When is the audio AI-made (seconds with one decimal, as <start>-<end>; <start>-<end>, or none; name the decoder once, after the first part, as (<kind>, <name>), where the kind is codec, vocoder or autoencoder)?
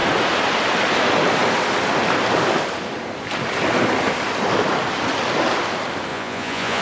6.1-6.8 (vocoder, Vocos)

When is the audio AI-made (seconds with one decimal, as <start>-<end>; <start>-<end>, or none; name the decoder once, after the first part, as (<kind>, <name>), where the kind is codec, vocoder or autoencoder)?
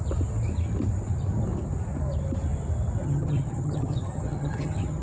3.0-5.0 (vocoder, HiFi-GAN)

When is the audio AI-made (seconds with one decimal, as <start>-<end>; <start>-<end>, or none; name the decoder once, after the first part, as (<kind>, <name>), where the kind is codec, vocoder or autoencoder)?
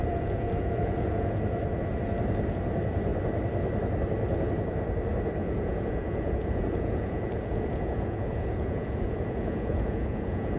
0.0-1.4 (vocoder, Vocos); 5.4-10.6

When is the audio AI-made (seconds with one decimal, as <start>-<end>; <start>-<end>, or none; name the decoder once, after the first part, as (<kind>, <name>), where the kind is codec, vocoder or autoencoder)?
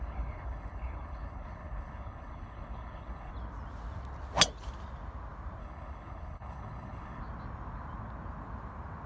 0.0-3.3 (codec, HILCodec); 5.6-7.2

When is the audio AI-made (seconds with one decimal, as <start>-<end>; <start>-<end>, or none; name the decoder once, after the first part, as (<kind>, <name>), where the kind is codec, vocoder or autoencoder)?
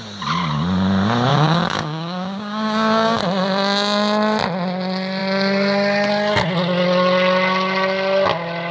1.3-3.2 (codec, DAC)